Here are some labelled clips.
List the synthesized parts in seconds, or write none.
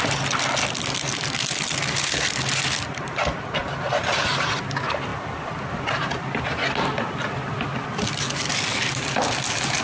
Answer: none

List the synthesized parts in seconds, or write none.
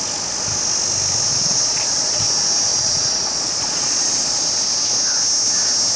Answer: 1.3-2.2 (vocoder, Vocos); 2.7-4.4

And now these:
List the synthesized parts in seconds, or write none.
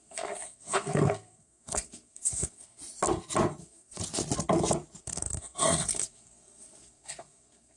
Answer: 0.0-2.8 (codec, SNAC); 3.6-4.0; 5.0-7.8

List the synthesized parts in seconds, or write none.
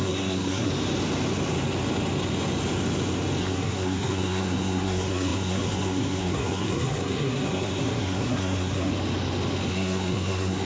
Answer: 0.0-0.7 (codec, SNAC); 3.4-8.9; 9.7-10.6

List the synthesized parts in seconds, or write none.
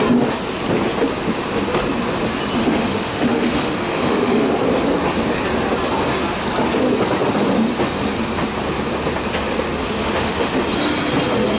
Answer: 2.6-4.5 (autoencoder, DAC-VAE); 9.8-10.6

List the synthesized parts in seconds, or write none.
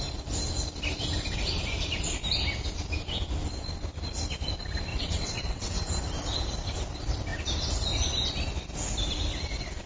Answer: 4.9-5.8 (vocoder, WaveNeXt)